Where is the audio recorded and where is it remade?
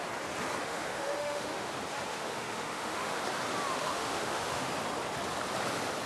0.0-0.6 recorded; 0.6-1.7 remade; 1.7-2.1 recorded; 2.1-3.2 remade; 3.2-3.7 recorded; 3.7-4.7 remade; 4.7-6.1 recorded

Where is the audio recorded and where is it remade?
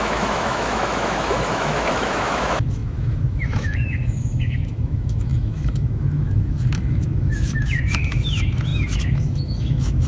0.0-10.1 remade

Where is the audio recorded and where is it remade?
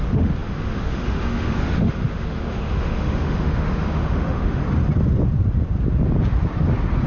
0.0-4.6 remade; 4.6-7.1 recorded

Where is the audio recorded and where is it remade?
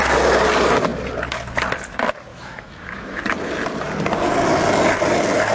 0.0-2.3 recorded; 2.3-3.2 remade; 3.2-5.5 recorded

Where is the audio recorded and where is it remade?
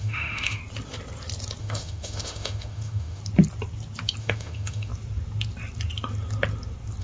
0.0-0.6 remade; 0.6-1.6 recorded; 1.6-3.2 remade; 3.2-4.2 recorded; 4.2-4.9 remade; 4.9-7.0 recorded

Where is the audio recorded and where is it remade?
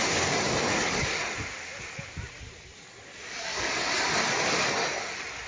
0.0-5.5 recorded